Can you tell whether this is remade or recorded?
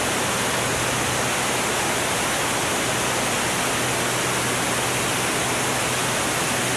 recorded